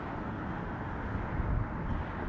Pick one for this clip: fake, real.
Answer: real